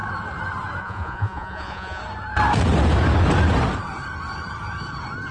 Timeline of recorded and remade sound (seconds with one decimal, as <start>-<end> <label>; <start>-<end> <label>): 0.0-0.8 recorded; 0.8-2.0 remade; 2.0-5.3 recorded